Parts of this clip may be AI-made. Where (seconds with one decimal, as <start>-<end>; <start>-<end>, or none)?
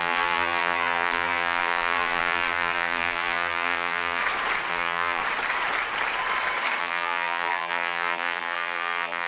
0.0-4.2; 4.7-5.2; 6.8-9.3